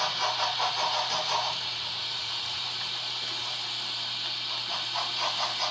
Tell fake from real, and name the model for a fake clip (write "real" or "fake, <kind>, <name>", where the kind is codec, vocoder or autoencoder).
real